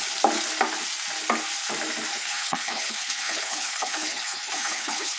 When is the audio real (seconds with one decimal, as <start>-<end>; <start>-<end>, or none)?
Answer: 0.0-2.1